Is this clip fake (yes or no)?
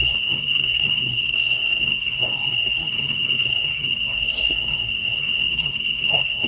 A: yes